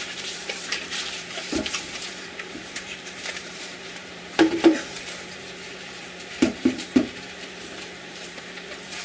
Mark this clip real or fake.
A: fake